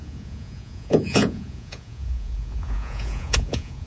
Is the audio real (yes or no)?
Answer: no